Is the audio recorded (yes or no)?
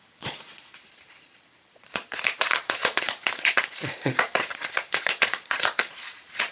no